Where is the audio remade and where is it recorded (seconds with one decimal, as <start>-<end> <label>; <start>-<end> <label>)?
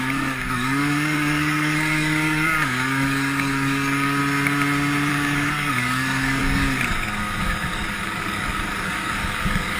0.0-4.2 remade; 4.2-5.1 recorded; 5.1-9.8 remade